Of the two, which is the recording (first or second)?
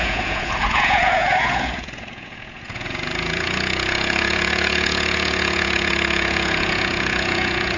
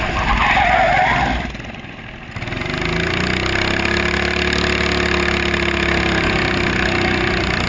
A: second